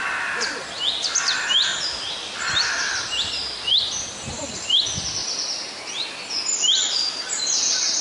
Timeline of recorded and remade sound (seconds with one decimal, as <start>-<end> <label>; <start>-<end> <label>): 0.0-8.0 recorded